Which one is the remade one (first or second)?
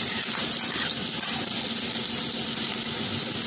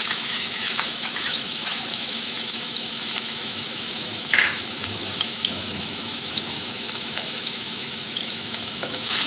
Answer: second